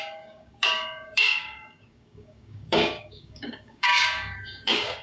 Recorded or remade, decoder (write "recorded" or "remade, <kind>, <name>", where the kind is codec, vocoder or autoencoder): remade, codec, DAC